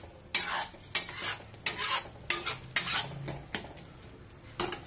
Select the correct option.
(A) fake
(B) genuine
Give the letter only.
B